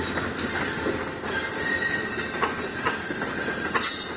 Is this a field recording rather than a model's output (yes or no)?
yes